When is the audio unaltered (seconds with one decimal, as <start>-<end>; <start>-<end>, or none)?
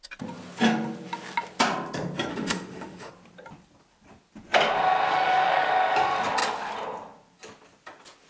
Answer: 0.0-2.3; 3.1-5.1; 5.7-8.3